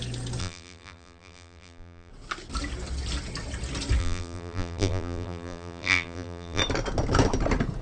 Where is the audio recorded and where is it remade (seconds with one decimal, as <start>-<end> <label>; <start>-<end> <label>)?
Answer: 0.0-0.4 recorded; 0.4-2.1 remade; 2.1-4.0 recorded; 4.0-6.6 remade; 6.6-7.8 recorded